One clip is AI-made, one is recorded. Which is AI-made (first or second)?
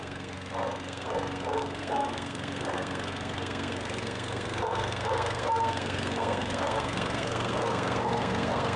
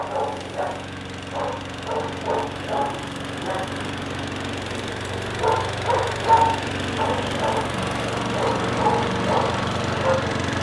first